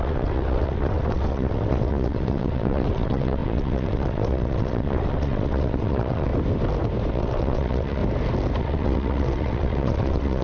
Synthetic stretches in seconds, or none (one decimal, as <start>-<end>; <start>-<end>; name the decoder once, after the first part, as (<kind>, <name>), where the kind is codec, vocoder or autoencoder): 0.0-6.3 (vocoder, WaveNeXt); 7.1-8.0; 8.6-10.4